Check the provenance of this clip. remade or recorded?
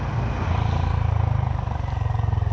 recorded